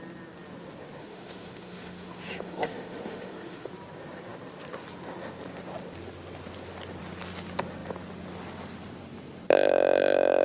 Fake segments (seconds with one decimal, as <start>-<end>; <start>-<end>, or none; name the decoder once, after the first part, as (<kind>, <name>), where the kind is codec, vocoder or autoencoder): 1.0-3.7 (autoencoder, DAC-VAE)